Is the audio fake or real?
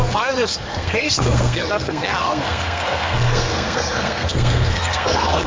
fake